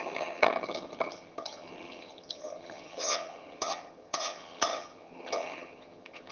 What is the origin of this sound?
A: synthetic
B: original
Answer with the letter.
A